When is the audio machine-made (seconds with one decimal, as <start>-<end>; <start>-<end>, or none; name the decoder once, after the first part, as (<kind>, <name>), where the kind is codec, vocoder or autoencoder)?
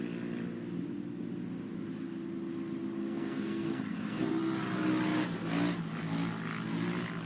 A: 3.0-4.3 (codec, SNAC)